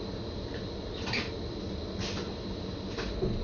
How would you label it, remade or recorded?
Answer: recorded